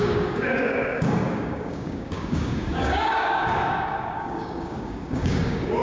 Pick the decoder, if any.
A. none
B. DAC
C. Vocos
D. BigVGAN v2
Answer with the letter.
B